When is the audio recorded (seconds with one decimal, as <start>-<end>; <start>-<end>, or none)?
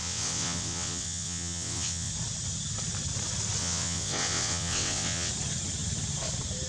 2.1-3.6; 5.3-6.7